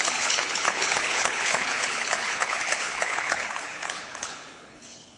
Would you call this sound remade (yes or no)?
yes